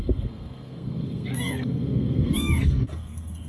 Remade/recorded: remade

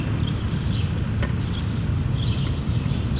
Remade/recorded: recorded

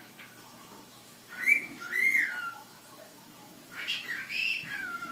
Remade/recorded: remade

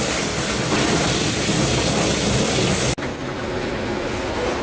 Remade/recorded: recorded